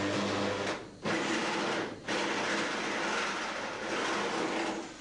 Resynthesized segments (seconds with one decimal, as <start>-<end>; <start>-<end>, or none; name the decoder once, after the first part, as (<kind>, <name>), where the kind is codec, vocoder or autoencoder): 1.4-2.2 (vocoder, BigVGAN v2)